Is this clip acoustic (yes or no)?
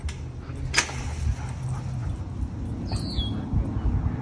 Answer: yes